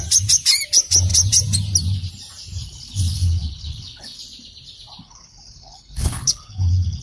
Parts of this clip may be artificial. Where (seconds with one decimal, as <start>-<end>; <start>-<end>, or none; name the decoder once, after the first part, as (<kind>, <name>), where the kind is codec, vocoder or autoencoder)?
2.6-4.2 (codec, HILCodec); 5.0-7.0